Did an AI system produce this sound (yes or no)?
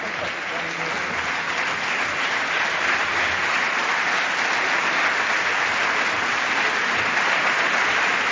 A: no